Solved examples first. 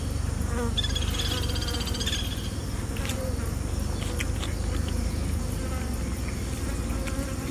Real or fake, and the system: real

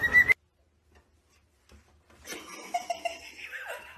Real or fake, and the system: real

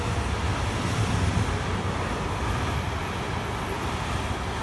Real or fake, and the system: real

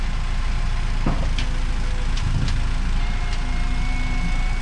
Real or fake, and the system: real